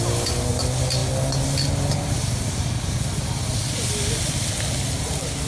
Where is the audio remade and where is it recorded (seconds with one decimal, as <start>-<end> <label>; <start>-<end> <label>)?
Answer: 0.0-5.5 recorded